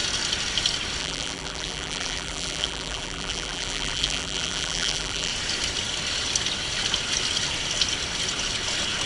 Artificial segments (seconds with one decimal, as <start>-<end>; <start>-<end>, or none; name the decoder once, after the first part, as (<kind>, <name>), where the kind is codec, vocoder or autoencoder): 1.0-5.3 (vocoder, BigVGAN v2)